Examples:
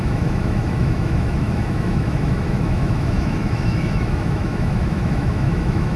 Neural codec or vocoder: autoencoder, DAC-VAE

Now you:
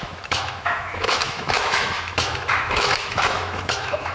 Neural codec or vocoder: autoencoder, DAC-VAE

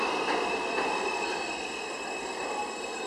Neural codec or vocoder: none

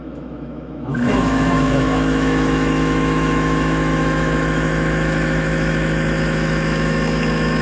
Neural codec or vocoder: autoencoder, DAC-VAE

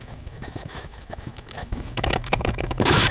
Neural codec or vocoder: autoencoder, DAC-VAE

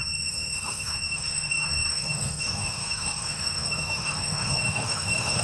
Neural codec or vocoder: autoencoder, DAC-VAE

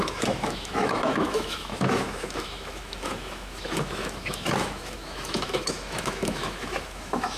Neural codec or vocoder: autoencoder, DAC-VAE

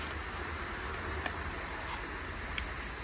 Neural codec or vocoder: none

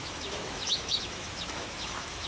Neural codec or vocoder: autoencoder, DAC-VAE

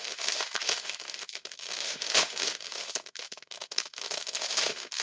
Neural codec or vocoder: autoencoder, DAC-VAE